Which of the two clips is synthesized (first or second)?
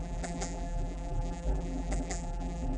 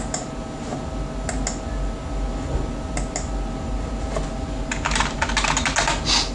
first